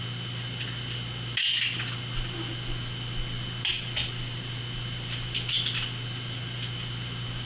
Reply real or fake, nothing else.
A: real